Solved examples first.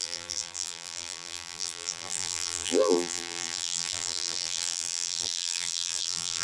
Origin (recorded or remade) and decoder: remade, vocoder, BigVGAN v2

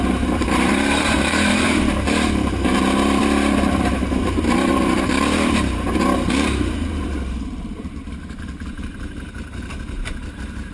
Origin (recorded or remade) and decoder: remade, vocoder, BigVGAN v2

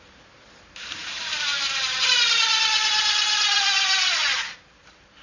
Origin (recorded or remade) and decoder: remade, vocoder, BigVGAN v2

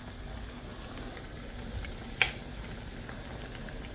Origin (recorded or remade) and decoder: recorded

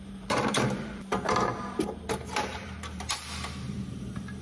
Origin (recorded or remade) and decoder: remade, vocoder, BigVGAN v2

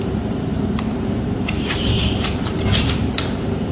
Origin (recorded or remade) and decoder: remade, vocoder, BigVGAN v2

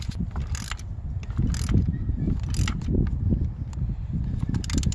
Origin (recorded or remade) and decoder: recorded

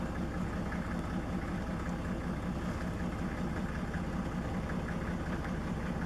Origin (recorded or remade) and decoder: recorded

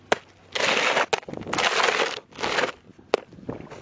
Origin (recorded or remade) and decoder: recorded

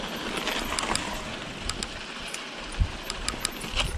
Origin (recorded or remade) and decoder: recorded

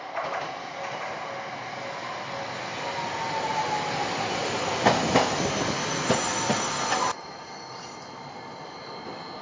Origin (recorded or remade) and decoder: recorded